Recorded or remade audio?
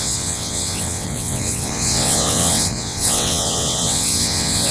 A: remade